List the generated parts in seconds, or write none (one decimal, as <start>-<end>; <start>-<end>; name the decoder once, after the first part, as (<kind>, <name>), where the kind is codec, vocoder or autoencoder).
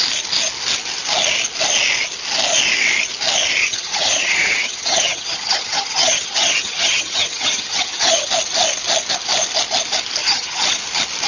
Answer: 3.6-8.3 (vocoder, HiFi-GAN); 10.2-10.8